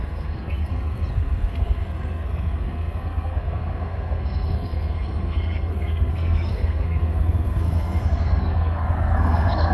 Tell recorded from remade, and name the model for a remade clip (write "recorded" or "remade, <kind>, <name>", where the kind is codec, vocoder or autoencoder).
remade, codec, SNAC